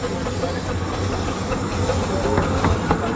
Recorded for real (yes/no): yes